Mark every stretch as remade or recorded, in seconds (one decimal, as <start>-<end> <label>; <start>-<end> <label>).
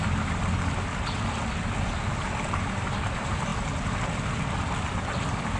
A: 0.0-5.6 recorded